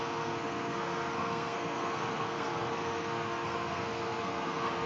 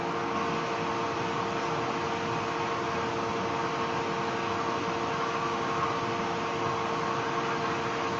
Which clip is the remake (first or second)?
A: first